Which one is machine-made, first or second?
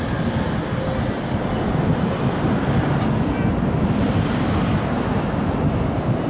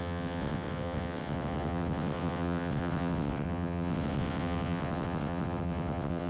second